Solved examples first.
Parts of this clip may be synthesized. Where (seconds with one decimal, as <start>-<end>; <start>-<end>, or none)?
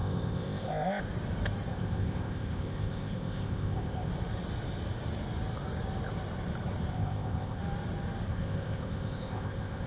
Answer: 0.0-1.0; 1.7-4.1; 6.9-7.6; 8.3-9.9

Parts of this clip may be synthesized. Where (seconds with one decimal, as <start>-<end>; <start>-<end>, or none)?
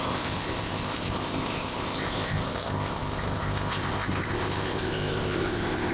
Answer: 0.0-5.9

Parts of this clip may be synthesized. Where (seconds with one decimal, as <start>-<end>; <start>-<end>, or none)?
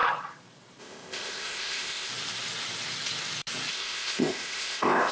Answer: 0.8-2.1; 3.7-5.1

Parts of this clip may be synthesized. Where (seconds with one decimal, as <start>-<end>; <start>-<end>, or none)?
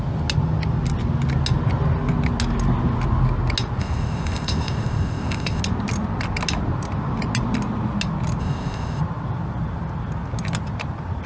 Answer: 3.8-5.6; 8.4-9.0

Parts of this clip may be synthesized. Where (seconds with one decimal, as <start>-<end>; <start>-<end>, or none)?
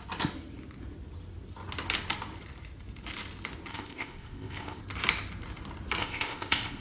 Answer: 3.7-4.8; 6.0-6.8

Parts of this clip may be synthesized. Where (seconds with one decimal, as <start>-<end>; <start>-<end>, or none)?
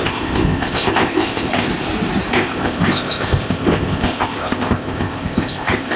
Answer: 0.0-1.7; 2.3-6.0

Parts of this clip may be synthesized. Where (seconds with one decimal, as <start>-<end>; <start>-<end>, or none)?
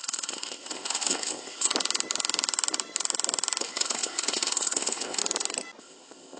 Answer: 0.0-1.7; 3.6-5.2; 5.8-6.4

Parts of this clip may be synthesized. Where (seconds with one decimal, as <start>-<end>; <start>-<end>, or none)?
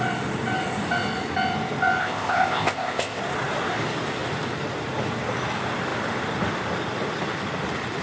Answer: 2.0-3.2